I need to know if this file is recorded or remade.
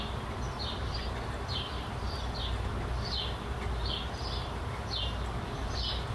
recorded